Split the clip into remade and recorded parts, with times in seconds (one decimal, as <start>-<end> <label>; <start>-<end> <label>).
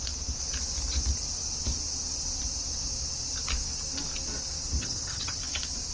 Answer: 0.0-4.8 recorded; 4.8-5.4 remade; 5.4-5.9 recorded